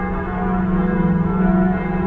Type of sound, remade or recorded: recorded